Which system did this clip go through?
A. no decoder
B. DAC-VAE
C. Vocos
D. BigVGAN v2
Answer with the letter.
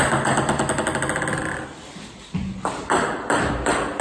A